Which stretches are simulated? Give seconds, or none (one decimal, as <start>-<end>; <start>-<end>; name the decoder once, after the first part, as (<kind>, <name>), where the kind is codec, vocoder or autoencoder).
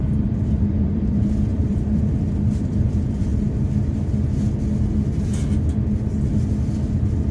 0.0-3.3 (vocoder, BigVGAN v2)